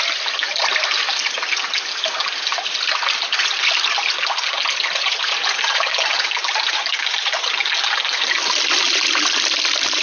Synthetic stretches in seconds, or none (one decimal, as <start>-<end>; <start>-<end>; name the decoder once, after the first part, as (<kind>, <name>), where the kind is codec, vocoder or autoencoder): 2.5-7.5 (vocoder, BigVGAN v2)